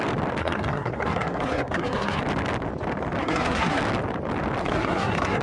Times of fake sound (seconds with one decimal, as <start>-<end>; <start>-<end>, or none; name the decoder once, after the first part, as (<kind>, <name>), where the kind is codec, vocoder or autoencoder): 0.4-2.2 (codec, SNAC); 3.2-3.8; 4.6-5.4